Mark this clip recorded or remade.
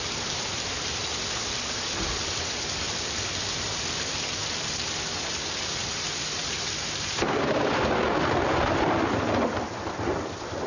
remade